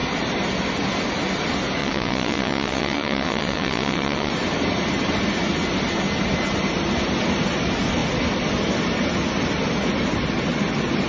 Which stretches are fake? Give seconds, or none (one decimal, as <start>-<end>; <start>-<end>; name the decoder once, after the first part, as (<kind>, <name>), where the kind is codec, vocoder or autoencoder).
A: 1.8-4.3 (vocoder, WaveNeXt)